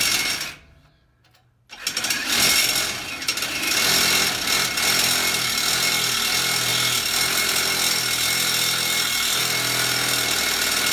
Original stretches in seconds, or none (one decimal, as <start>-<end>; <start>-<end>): 0.0-10.9